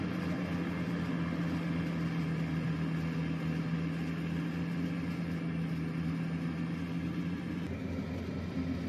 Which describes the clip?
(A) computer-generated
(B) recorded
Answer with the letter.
B